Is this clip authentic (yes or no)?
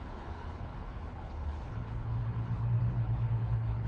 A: no